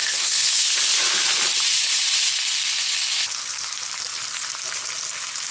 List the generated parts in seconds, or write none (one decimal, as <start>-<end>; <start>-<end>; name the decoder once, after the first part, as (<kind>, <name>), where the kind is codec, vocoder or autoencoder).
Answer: 0.0-0.7 (codec, SNAC)